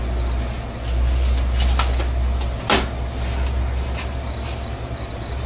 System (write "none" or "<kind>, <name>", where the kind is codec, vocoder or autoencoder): none